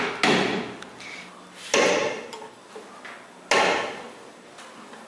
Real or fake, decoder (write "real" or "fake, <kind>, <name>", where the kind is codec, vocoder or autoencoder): real